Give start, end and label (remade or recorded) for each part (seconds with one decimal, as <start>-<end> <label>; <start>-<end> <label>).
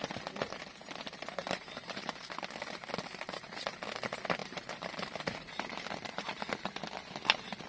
0.0-0.8 recorded; 0.8-2.3 remade; 2.3-4.4 recorded; 4.4-6.3 remade; 6.3-7.7 recorded